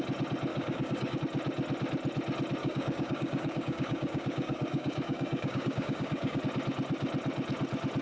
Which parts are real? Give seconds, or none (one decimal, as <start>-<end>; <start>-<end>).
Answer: 0.0-0.5; 1.2-2.6; 6.4-8.0